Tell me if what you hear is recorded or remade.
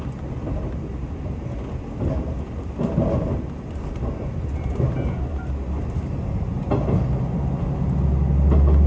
recorded